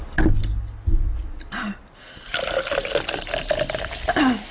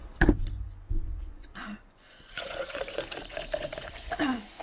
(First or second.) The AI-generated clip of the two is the second